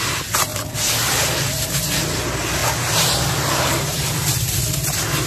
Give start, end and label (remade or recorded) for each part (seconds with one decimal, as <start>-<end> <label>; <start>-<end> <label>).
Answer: 0.0-0.5 recorded; 0.5-2.0 remade; 2.0-2.6 recorded; 2.6-4.6 remade; 4.6-5.3 recorded